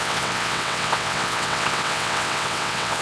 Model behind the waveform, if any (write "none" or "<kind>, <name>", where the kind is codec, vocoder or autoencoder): vocoder, WaveNeXt